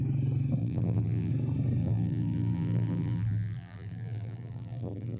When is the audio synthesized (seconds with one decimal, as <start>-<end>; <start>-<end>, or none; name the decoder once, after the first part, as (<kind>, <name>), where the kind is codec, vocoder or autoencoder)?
0.6-1.3 (vocoder, BigVGAN v2); 1.8-5.2